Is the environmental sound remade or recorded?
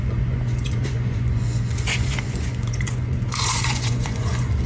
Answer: remade